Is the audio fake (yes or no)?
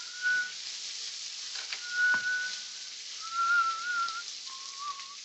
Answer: no